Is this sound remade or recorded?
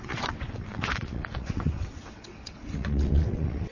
remade